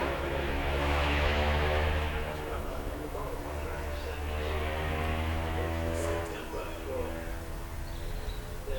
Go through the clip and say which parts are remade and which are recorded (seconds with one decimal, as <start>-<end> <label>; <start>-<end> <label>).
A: 0.0-3.4 remade; 3.4-5.1 recorded; 5.1-6.2 remade; 6.2-8.8 recorded